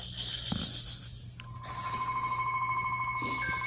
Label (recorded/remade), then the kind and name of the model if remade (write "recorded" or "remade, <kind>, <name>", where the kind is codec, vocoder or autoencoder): recorded